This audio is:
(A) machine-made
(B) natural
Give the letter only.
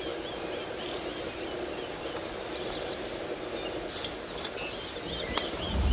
B